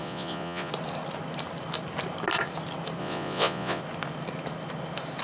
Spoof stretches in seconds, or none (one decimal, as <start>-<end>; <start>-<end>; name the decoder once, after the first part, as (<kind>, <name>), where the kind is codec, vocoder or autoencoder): 0.0-0.7 (vocoder, Vocos); 3.0-3.8